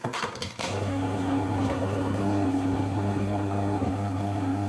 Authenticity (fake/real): fake